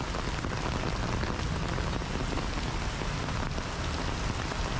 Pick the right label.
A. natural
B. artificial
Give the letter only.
A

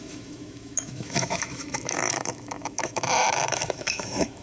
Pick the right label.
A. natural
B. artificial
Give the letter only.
B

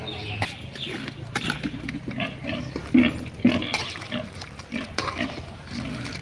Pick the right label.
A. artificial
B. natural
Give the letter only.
B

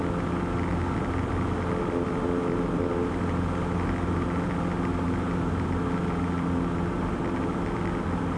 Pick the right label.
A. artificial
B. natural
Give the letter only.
B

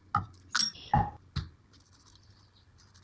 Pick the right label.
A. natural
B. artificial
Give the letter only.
A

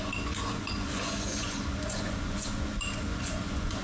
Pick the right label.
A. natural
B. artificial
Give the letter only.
B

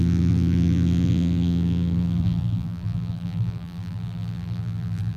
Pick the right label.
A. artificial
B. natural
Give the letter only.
A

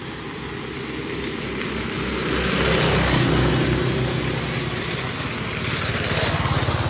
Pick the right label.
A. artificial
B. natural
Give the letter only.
B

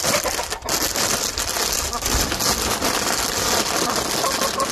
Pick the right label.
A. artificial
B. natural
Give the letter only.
B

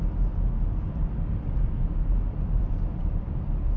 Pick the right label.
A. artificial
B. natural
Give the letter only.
A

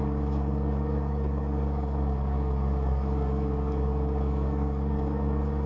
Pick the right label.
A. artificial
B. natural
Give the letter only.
A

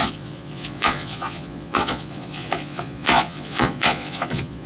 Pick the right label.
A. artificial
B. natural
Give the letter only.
A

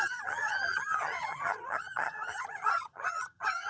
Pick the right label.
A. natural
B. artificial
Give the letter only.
B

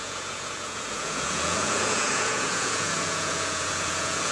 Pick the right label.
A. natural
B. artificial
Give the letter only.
B